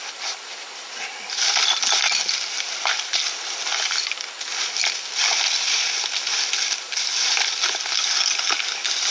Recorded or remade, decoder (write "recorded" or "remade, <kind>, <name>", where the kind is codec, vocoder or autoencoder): recorded